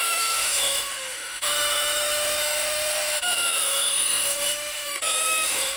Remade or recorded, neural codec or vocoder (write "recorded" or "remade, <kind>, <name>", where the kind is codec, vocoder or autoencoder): remade, autoencoder, DAC-VAE